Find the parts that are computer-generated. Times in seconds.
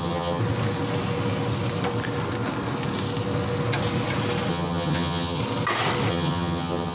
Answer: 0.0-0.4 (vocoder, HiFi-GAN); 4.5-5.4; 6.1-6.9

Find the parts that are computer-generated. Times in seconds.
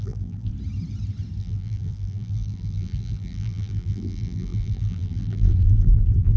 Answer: 0.0-0.5 (vocoder, BigVGAN v2); 1.4-6.4